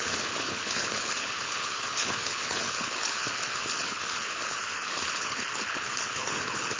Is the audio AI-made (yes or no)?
yes